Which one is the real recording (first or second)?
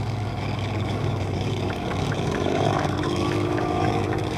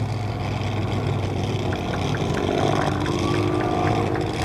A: second